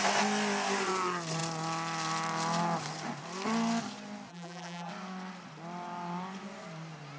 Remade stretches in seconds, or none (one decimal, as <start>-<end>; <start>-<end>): 4.3-4.9